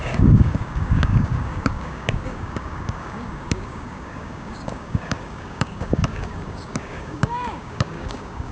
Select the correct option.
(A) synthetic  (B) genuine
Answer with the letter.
A